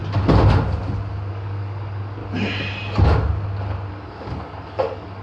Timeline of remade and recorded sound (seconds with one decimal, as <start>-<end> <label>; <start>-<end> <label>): 0.0-1.3 recorded; 1.3-2.2 remade; 2.2-3.9 recorded; 3.9-5.2 remade